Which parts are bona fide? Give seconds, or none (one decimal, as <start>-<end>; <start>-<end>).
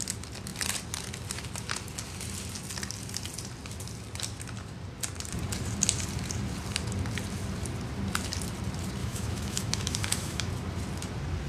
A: 0.0-9.0; 10.5-11.5